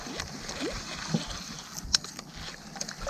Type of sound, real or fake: real